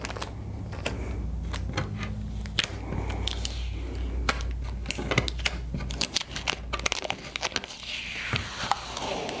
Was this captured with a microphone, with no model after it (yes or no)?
yes